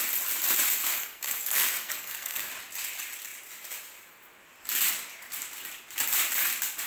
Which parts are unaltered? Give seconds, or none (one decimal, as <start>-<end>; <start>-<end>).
0.0-0.8; 2.5-6.9